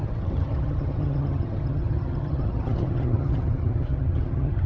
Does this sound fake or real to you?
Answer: fake